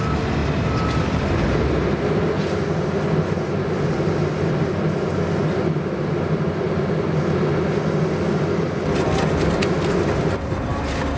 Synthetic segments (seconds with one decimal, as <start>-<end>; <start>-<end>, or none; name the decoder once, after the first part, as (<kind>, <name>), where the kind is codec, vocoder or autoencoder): none